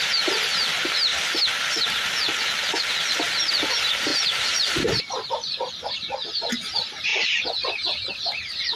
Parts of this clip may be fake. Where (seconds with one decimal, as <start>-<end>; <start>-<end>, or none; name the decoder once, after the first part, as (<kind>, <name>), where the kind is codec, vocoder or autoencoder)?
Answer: 0.0-1.1 (vocoder, BigVGAN v2); 3.5-8.8